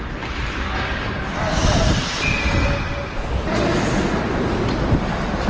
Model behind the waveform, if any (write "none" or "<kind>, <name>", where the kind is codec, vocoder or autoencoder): none